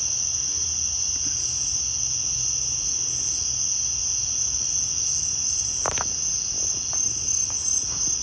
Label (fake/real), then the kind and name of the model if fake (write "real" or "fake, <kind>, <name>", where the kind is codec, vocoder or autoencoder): real